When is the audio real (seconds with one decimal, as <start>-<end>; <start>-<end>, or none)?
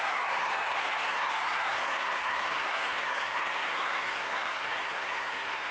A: none